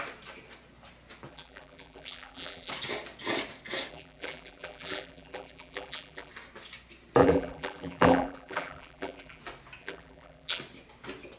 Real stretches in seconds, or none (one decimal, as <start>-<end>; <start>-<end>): 0.0-1.3; 2.7-3.9; 6.3-7.2; 9.4-9.8; 10.6-11.4